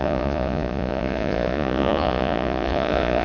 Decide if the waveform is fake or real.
fake